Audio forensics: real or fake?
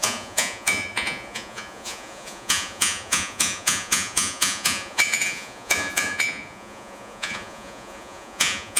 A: fake